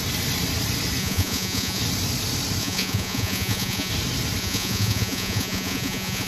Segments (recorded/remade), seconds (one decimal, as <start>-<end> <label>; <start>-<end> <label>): 0.0-1.0 recorded; 1.0-1.8 remade; 1.8-2.6 recorded; 2.6-3.9 remade; 3.9-4.4 recorded; 4.4-6.3 remade